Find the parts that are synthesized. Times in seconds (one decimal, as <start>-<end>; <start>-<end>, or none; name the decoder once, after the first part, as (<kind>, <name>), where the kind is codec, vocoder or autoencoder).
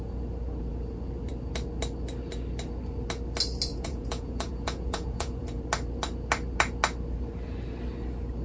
3.7-5.6 (vocoder, Vocos)